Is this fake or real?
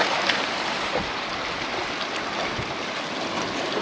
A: real